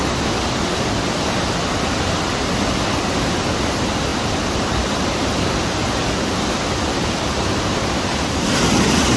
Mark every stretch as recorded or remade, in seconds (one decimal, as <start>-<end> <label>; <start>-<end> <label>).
0.0-4.1 recorded; 4.1-7.6 remade; 7.6-9.2 recorded